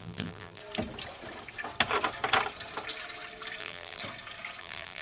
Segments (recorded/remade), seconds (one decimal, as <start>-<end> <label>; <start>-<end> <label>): 0.0-0.6 remade; 0.6-3.6 recorded; 3.6-4.0 remade; 4.0-4.6 recorded; 4.6-5.0 remade